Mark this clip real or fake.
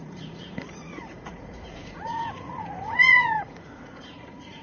fake